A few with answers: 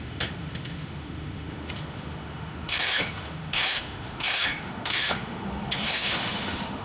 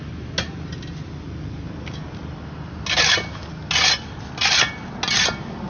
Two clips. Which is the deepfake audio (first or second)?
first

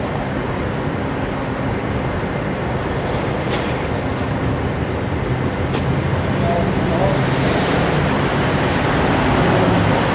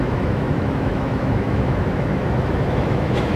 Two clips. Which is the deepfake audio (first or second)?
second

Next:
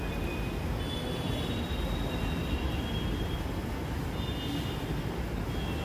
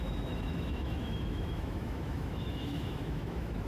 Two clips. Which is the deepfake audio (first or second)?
second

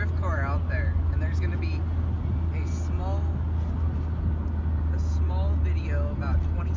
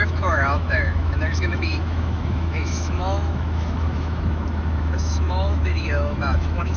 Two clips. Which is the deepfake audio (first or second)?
second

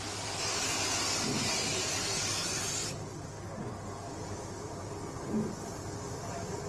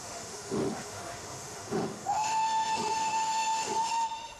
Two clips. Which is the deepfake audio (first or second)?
second